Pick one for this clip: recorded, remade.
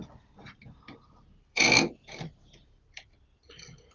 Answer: recorded